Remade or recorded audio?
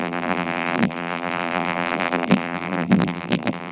remade